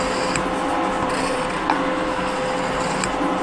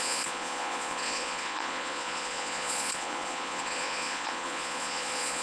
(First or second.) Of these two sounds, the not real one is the second